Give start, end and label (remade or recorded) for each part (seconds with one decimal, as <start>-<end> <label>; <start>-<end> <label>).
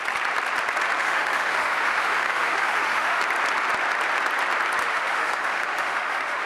0.0-1.0 recorded; 1.0-3.2 remade; 3.2-4.8 recorded; 4.8-6.5 remade